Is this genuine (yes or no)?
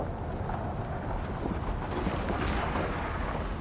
yes